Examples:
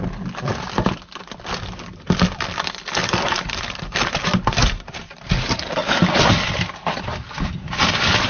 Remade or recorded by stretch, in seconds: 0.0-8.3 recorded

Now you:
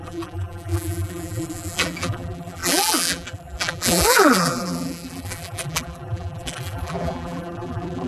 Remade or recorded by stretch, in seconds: 0.0-8.1 remade

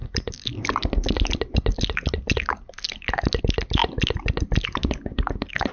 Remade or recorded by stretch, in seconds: 0.0-5.7 recorded

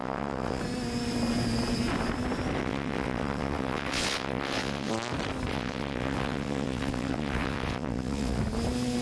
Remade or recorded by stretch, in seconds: 0.0-0.6 remade; 0.6-2.6 recorded; 2.6-4.9 remade; 4.9-5.5 recorded; 5.5-8.4 remade; 8.4-9.0 recorded